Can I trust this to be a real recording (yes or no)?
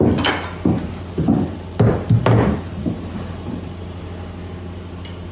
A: yes